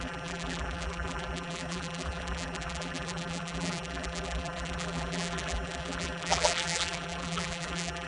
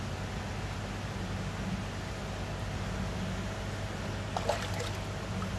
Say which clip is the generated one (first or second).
first